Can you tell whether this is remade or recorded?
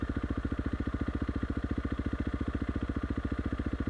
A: recorded